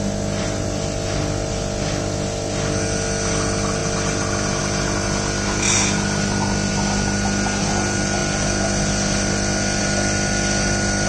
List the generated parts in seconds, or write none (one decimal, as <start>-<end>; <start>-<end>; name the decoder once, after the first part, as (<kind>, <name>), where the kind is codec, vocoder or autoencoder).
none